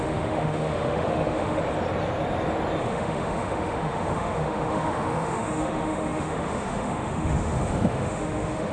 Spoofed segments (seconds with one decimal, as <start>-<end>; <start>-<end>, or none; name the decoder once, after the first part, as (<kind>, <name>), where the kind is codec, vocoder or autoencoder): 0.0-1.6 (autoencoder, DAC-VAE); 2.8-8.7